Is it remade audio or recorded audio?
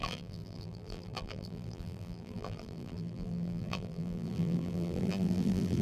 remade